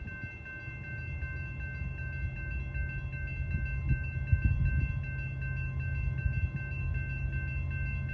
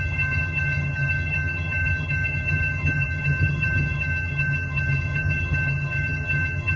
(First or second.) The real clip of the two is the first